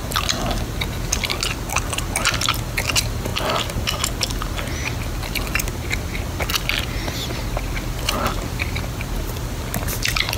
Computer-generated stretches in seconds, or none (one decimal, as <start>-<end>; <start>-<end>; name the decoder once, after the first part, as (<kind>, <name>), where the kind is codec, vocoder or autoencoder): none